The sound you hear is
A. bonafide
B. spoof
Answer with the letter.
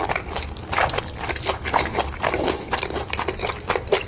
A